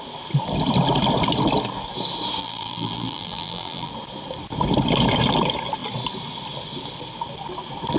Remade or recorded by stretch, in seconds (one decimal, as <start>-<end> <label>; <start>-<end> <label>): 0.0-2.4 recorded; 2.4-3.9 remade; 3.9-8.0 recorded